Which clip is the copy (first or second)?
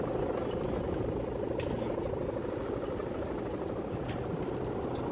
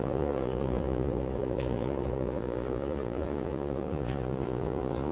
second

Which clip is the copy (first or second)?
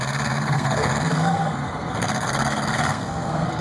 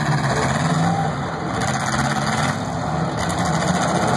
first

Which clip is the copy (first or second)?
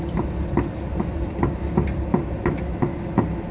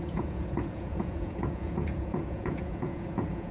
second